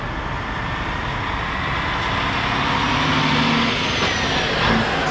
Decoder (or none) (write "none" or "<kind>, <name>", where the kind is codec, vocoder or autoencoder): none